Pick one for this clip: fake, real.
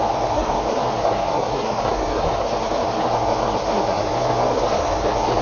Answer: fake